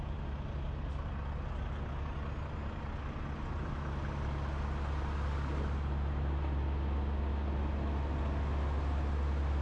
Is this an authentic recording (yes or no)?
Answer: yes